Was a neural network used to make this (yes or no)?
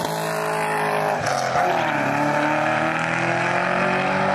no